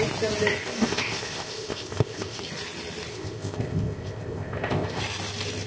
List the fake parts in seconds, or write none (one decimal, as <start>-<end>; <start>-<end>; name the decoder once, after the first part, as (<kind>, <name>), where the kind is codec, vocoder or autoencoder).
0.6-2.4 (codec, ZipCodec); 3.1-5.0